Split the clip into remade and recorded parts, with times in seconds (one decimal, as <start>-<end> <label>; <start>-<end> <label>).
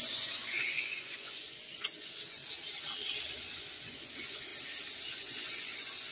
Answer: 0.0-2.4 remade; 2.4-3.4 recorded; 3.4-4.5 remade; 4.5-5.0 recorded; 5.0-6.1 remade